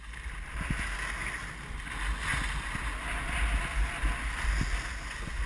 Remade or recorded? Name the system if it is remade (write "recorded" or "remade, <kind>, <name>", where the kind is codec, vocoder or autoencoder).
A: recorded